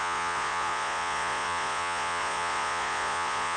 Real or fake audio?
fake